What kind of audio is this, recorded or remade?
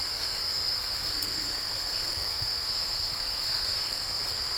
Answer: remade